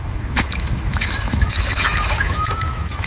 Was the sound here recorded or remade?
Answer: remade